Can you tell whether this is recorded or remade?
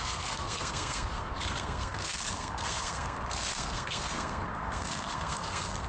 remade